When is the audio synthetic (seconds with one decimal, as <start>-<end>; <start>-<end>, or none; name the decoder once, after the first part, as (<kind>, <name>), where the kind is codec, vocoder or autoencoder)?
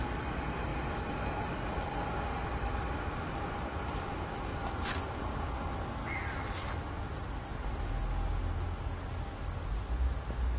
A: 0.0-0.7 (vocoder, BigVGAN v2); 3.3-4.5; 5.2-6.0; 9.7-10.6